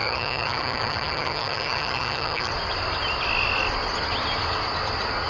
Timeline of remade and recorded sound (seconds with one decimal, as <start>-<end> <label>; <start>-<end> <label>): 0.0-2.5 remade; 2.5-5.3 recorded